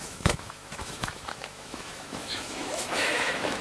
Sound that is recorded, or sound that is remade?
remade